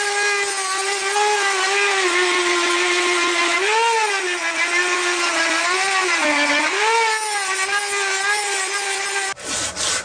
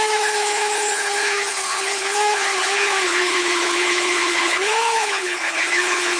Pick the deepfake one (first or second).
second